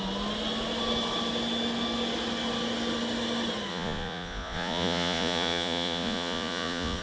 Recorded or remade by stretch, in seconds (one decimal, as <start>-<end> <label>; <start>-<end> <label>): 0.0-3.7 recorded; 3.7-7.0 remade